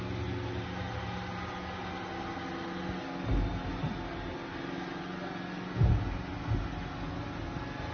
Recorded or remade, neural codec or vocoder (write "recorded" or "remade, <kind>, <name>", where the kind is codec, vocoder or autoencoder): recorded